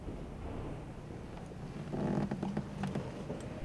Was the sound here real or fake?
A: real